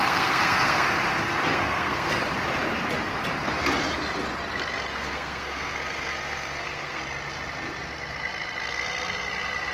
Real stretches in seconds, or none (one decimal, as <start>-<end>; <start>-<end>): 0.9-1.5; 2.1-4.9; 7.0-9.7